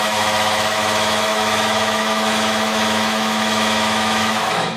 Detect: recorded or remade remade